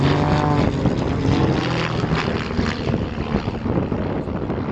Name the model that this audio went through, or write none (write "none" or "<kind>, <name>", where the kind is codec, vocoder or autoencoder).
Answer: none